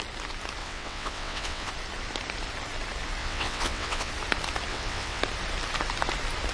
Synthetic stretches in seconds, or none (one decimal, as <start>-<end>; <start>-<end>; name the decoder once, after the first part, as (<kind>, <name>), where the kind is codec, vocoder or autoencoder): 0.6-1.7 (vocoder, WaveNeXt); 3.2-4.1; 4.7-5.2